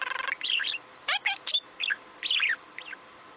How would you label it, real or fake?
real